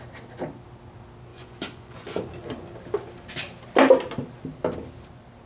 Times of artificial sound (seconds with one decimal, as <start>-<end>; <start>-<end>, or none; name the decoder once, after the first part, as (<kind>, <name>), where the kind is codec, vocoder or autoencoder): 1.3-2.7 (vocoder, Vocos)